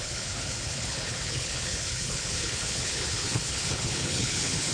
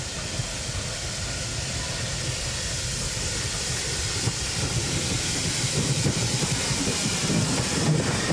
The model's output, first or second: first